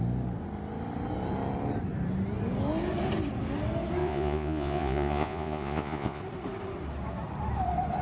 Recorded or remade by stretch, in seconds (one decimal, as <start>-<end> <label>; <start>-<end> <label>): 0.0-4.0 recorded; 4.0-6.2 remade; 6.2-8.0 recorded